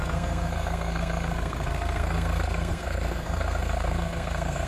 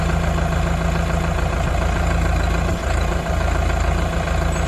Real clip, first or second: second